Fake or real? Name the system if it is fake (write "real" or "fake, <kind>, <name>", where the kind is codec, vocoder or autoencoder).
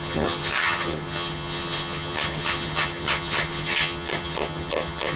fake, vocoder, HiFi-GAN